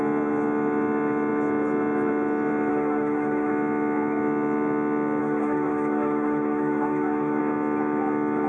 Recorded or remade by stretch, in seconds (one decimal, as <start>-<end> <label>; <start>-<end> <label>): 0.0-2.7 recorded; 2.7-3.5 remade; 3.5-5.2 recorded; 5.2-7.4 remade; 7.4-8.5 recorded